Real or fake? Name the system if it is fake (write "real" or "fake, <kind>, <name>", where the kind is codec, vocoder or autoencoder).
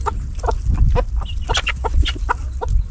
real